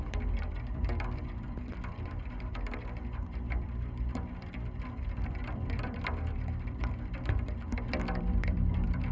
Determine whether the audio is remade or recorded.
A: remade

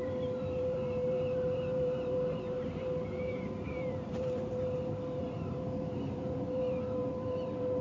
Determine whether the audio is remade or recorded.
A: remade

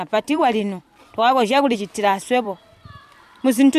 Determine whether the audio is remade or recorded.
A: remade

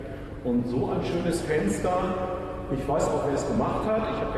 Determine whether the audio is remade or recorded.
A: remade